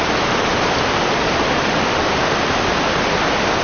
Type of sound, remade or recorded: recorded